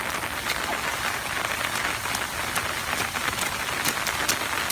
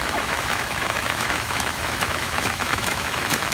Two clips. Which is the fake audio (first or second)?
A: second